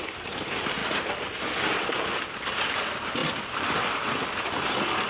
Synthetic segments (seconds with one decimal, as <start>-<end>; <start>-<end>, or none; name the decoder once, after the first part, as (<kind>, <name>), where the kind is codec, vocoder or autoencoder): 0.0-0.8 (vocoder, BigVGAN v2); 1.4-5.1